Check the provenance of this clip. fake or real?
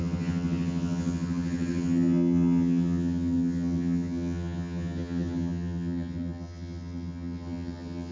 fake